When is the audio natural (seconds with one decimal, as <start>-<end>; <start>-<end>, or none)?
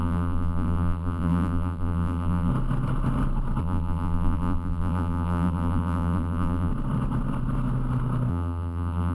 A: 2.5-3.6; 6.7-8.3